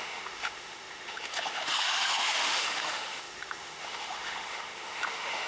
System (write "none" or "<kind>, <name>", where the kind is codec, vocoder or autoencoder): autoencoder, DAC-VAE